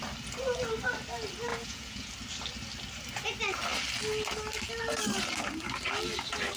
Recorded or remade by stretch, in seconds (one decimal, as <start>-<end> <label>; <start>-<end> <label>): 0.0-1.5 recorded; 1.5-2.1 remade; 2.1-6.6 recorded